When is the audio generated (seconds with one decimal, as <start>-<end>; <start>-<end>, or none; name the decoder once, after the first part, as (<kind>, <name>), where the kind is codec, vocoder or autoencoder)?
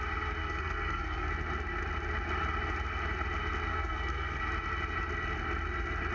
0.4-1.3 (codec, SNAC); 3.7-4.4